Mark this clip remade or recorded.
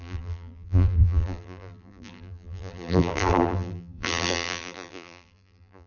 remade